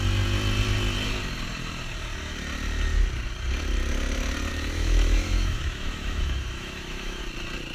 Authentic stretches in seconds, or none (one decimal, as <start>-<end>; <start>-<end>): 0.0-4.5; 7.2-7.7